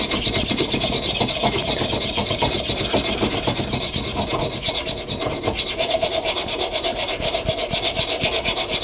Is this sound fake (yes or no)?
yes